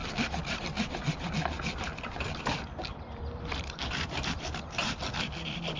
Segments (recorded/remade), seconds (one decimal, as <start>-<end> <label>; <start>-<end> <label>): 0.0-2.9 recorded; 2.9-5.0 remade; 5.0-5.8 recorded